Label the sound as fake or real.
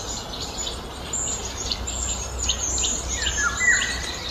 real